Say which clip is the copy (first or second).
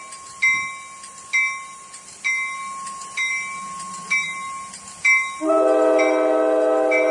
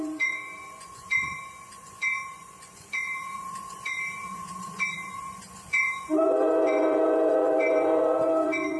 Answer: second